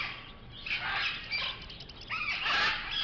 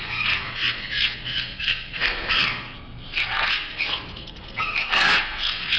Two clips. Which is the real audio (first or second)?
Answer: first